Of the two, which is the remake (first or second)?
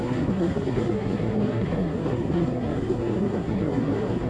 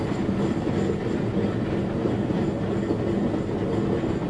first